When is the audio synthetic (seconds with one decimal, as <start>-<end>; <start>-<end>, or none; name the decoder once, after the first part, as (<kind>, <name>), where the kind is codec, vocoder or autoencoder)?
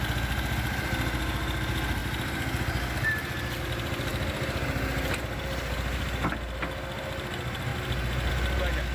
none